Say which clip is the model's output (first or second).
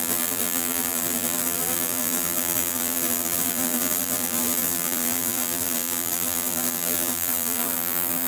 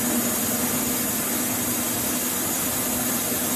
first